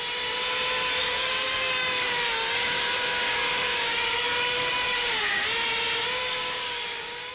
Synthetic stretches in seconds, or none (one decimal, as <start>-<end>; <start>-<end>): 1.0-5.4; 6.2-7.3